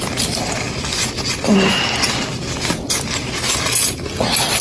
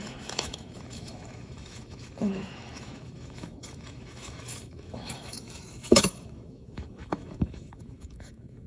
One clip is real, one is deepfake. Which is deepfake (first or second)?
second